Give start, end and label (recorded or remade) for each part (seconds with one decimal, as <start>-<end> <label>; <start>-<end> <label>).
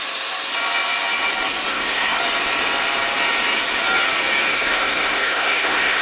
0.0-1.7 recorded; 1.7-2.2 remade; 2.2-4.5 recorded; 4.5-6.0 remade